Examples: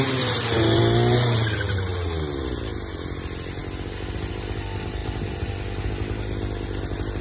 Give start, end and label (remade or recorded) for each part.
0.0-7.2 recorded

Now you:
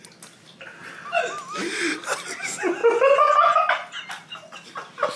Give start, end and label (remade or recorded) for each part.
0.0-5.2 recorded

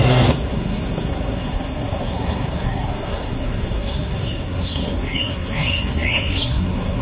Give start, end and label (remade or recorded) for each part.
0.0-7.0 remade

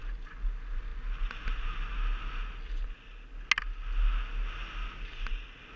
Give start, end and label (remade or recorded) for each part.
0.0-5.8 recorded

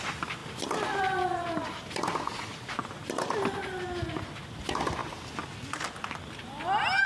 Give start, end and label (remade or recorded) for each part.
0.0-7.1 recorded